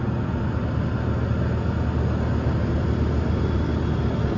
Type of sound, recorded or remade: recorded